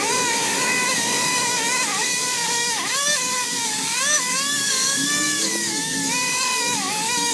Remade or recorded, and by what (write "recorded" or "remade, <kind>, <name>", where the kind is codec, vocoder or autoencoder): remade, codec, DAC